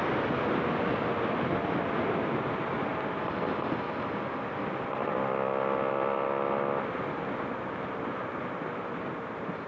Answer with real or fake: real